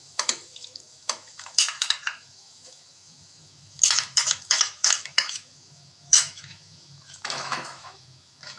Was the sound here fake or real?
fake